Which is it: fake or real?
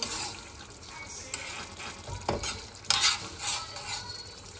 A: real